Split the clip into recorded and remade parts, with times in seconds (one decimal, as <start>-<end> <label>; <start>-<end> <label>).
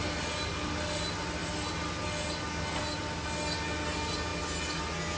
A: 0.0-5.2 recorded